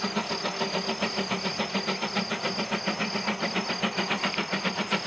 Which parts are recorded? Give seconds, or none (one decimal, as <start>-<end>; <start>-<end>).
0.0-5.1